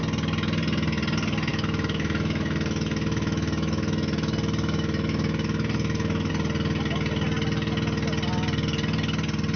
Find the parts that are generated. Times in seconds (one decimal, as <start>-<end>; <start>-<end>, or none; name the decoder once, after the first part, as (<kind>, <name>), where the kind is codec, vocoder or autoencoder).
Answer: 1.5-6.3 (autoencoder, DAC-VAE)